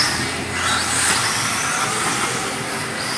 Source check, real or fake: real